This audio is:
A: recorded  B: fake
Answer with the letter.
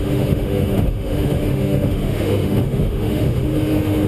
B